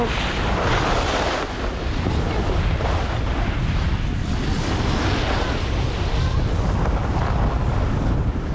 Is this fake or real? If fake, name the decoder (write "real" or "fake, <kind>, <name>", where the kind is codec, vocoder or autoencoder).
real